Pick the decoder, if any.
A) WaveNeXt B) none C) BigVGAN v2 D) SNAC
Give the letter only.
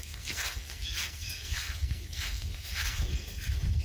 D